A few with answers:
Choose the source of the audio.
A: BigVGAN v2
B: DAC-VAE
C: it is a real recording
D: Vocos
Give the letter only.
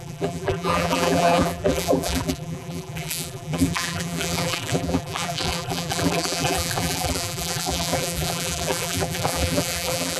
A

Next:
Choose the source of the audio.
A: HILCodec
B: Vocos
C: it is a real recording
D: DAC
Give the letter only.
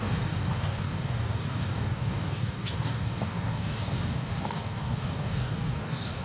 D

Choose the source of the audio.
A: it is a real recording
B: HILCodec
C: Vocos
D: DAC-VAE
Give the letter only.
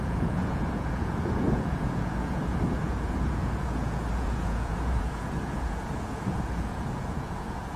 C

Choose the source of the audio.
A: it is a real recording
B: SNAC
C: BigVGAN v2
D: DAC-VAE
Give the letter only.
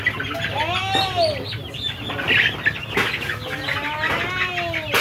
A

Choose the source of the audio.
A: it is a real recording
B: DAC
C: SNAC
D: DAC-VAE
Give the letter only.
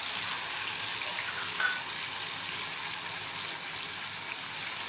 A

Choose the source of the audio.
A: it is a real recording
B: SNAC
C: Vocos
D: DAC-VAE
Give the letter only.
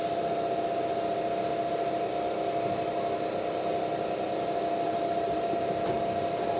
A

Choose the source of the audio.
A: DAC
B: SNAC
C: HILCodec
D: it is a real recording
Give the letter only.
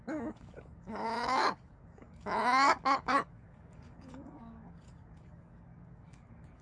A